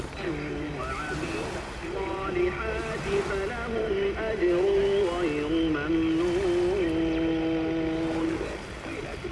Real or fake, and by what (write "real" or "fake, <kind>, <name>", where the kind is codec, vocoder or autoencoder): real